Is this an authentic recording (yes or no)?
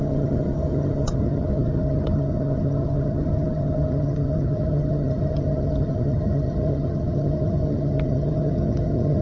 no